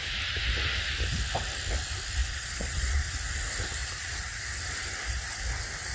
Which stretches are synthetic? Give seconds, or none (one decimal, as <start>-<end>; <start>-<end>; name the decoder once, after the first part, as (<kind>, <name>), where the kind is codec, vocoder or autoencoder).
2.2-3.1 (vocoder, Vocos); 3.8-4.4